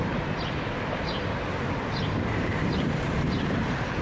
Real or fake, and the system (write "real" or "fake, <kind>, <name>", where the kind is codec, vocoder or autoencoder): fake, vocoder, BigVGAN v2